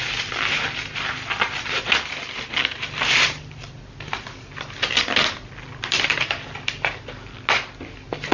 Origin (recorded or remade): recorded